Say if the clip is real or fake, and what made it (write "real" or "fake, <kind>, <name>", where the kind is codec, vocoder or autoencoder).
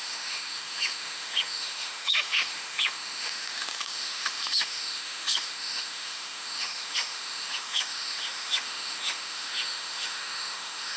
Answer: fake, autoencoder, DAC-VAE